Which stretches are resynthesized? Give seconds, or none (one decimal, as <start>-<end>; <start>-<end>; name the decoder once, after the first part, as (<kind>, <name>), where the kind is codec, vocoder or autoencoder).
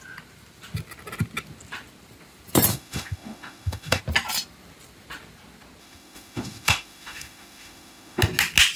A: 2.7-4.0 (autoencoder, DAC-VAE); 5.8-8.2